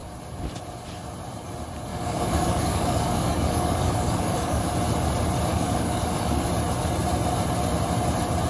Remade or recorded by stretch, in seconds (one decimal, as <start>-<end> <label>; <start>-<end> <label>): 0.0-1.9 recorded; 1.9-4.7 remade; 4.7-5.5 recorded; 5.5-6.5 remade; 6.5-8.5 recorded